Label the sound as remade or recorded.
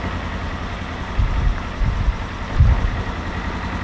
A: recorded